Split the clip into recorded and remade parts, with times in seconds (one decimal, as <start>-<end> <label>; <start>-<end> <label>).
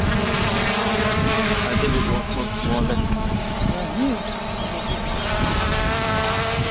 0.0-1.3 recorded; 1.3-3.6 remade; 3.6-6.7 recorded